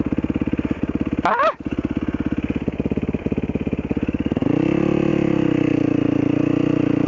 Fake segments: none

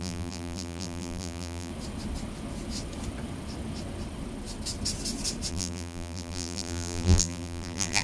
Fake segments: 0.0-1.7 (vocoder, BigVGAN v2); 5.5-8.0

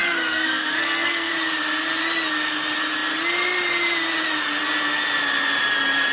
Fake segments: 0.0-1.3 (codec, SNAC)

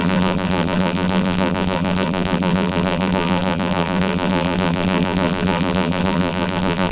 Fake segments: 0.0-6.9 (vocoder, BigVGAN v2)

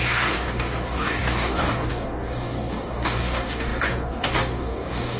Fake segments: 0.0-5.2 (codec, DAC)

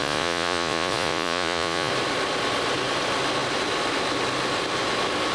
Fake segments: 0.0-1.9 (vocoder, Vocos)